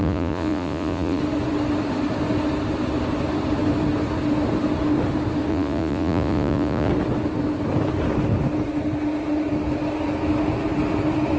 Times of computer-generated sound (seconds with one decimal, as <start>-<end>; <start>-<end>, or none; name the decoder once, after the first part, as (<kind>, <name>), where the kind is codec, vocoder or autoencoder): 0.0-1.2 (vocoder, Vocos); 5.5-6.9